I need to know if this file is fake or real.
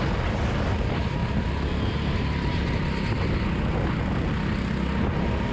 real